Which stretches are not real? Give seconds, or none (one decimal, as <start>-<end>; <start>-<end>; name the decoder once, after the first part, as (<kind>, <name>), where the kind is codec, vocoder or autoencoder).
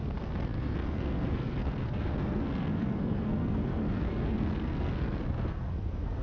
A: 0.0-6.2 (codec, SNAC)